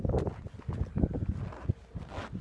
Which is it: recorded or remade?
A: recorded